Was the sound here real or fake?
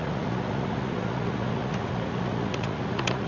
fake